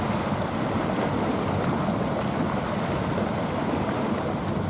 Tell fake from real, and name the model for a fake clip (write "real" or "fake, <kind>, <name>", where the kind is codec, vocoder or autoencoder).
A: real